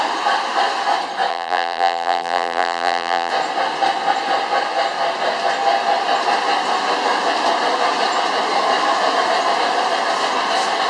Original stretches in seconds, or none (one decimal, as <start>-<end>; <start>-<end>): 0.0-1.3; 3.3-10.9